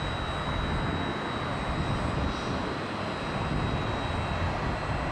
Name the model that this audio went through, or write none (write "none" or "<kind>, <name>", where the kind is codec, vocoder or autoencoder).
none